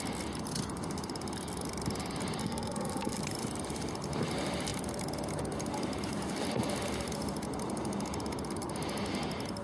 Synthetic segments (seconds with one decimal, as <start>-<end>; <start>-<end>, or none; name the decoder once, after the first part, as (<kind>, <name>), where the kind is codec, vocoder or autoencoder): 2.4-3.2 (codec, SNAC)